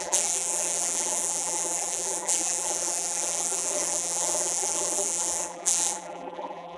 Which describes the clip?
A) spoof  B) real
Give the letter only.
A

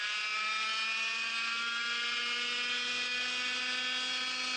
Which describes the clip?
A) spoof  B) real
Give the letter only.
B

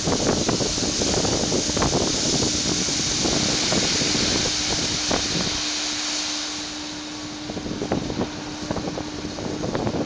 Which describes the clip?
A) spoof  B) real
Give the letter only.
B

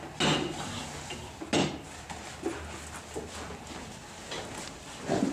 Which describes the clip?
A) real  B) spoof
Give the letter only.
A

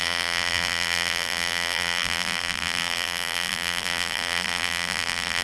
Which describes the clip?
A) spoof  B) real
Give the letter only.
A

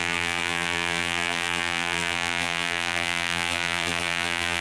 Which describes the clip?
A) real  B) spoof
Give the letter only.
B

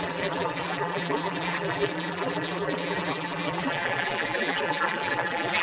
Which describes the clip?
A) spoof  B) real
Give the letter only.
A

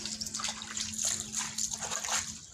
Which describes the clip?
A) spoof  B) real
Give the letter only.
B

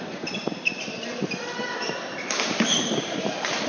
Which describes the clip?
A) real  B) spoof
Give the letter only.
B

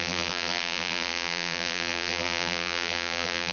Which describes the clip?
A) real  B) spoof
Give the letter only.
B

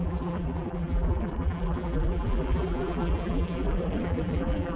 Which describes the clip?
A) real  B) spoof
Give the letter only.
B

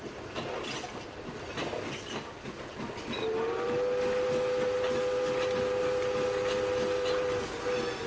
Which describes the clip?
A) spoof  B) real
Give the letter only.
B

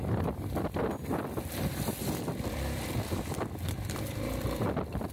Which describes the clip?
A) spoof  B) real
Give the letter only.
A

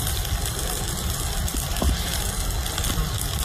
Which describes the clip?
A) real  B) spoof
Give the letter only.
A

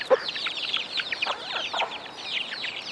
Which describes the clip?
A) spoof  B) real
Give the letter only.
A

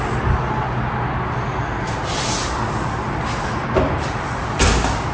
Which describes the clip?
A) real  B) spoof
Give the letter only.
A